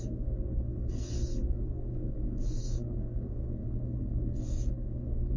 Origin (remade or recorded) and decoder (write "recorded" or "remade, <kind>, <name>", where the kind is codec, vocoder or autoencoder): remade, codec, SNAC